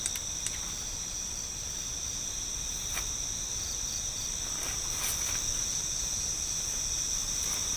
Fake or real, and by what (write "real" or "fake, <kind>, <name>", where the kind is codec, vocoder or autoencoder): real